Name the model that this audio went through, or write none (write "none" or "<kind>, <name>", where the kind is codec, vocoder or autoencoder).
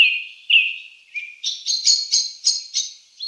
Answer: none